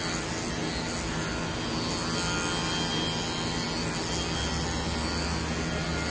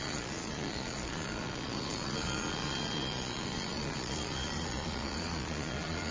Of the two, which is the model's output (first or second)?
second